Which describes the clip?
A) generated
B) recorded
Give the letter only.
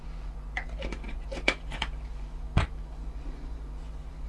A